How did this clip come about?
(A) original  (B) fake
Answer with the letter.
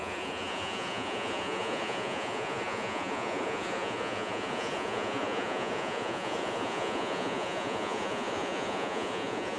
B